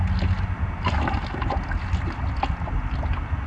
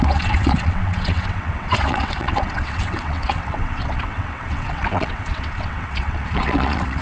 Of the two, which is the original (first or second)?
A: first